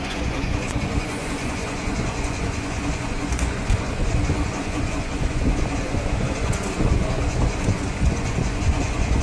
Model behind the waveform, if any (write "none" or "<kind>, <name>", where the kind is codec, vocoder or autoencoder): vocoder, Vocos